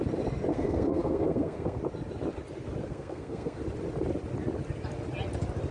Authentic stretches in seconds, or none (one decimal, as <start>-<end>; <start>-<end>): 0.0-0.5; 1.8-2.8; 3.6-5.7